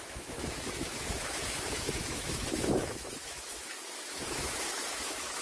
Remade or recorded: remade